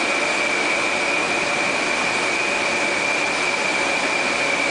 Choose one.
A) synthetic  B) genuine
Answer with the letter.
B